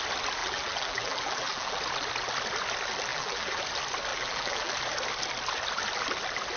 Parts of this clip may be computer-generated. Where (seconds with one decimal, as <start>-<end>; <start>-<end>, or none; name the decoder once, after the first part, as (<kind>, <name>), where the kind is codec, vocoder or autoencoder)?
0.4-1.8 (vocoder, BigVGAN v2); 3.1-3.6; 4.1-4.7